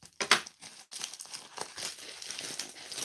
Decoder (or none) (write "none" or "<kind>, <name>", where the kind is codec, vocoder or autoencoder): none